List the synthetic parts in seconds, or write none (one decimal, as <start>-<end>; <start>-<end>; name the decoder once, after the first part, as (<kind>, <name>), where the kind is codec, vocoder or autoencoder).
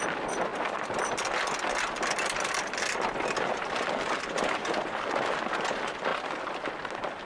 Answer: 0.5-2.8 (vocoder, BigVGAN v2); 3.5-5.0; 6.1-6.7